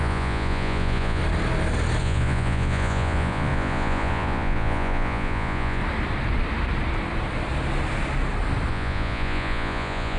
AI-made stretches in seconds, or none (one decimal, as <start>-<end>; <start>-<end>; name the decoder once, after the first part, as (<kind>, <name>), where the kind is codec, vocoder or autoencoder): 0.0-1.2 (vocoder, Vocos); 2.0-5.8; 8.7-10.2